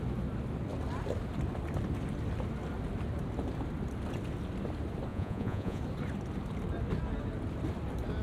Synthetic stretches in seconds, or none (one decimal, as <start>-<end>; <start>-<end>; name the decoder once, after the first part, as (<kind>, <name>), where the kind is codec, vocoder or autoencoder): 5.1-5.8 (vocoder, Vocos)